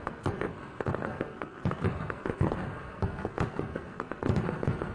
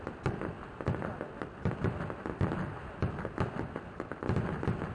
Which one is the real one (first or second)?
second